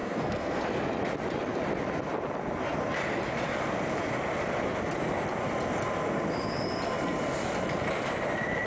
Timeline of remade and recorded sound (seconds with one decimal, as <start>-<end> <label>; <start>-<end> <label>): 0.0-0.6 remade; 0.6-8.7 recorded